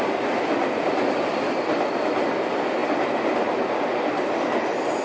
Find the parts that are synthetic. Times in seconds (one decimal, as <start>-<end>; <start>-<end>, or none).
none